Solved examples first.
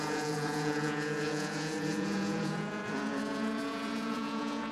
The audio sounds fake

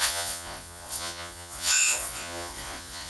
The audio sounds fake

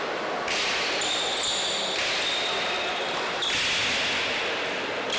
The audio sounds real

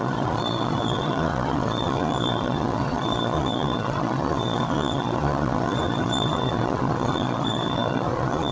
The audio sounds fake